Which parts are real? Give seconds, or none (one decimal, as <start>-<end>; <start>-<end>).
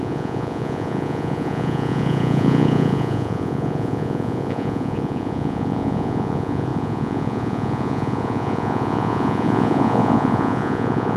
none